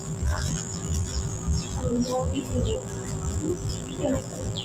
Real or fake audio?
fake